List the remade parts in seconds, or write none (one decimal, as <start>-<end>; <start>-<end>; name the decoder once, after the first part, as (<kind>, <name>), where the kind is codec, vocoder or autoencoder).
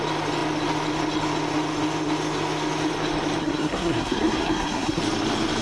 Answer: 3.4-5.0 (codec, SNAC)